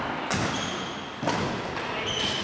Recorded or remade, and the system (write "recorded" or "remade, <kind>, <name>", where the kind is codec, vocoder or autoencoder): recorded